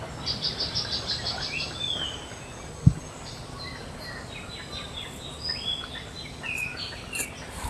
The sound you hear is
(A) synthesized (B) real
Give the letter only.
B